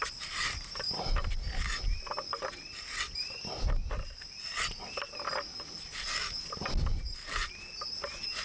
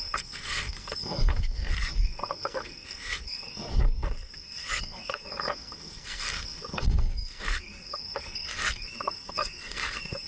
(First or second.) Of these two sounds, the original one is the first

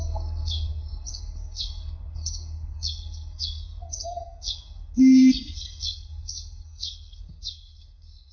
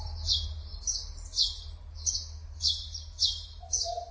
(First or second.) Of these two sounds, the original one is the second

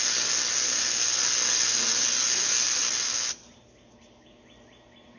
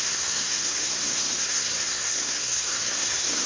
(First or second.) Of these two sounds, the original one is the first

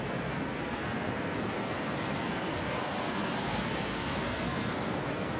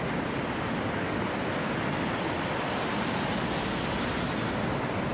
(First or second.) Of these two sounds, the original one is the second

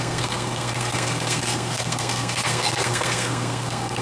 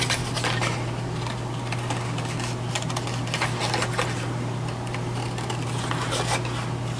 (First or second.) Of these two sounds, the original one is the second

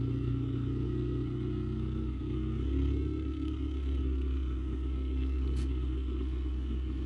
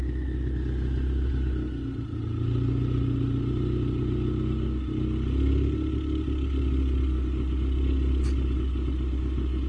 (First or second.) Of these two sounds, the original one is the second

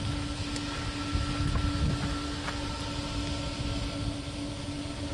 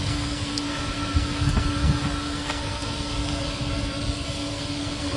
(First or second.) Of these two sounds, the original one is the first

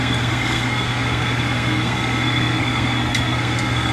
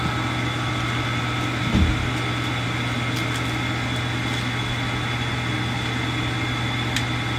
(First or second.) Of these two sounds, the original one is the second